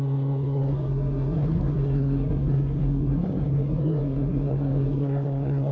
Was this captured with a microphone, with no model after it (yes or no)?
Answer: no